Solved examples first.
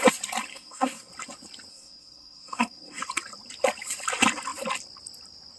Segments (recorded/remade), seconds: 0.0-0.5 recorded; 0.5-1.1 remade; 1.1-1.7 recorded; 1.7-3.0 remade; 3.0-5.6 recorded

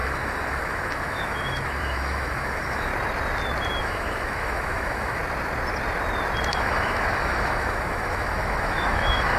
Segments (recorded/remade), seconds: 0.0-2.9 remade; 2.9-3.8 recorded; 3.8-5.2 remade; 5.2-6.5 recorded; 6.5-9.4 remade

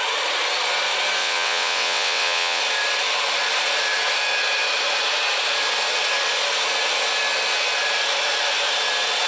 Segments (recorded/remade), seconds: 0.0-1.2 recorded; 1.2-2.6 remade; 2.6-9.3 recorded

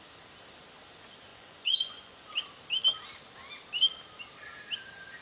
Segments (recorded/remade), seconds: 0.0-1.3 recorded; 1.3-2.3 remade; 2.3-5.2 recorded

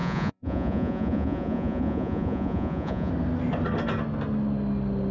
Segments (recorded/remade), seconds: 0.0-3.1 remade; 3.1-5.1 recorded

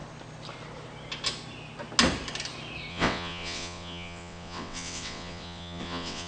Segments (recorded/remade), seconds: 0.0-2.9 recorded; 2.9-6.3 remade

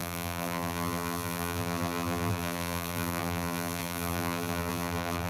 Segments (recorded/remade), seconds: 0.0-5.3 remade